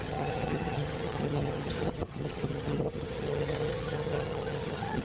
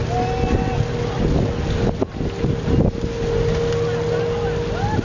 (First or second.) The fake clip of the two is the first